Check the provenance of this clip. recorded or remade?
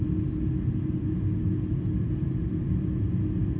recorded